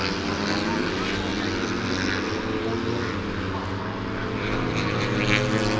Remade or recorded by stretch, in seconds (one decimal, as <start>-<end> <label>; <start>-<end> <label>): 0.0-4.2 recorded; 4.2-5.2 remade; 5.2-5.8 recorded